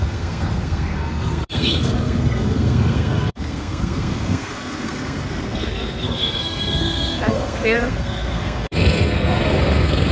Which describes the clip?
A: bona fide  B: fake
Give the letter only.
B